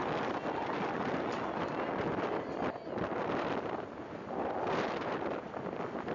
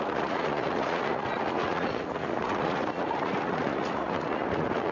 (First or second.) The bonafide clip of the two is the first